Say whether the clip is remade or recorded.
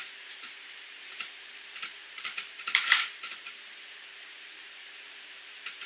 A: remade